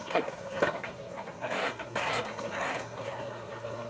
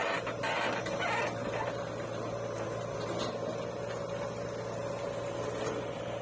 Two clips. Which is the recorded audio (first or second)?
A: second